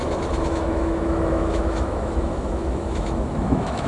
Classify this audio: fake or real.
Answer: fake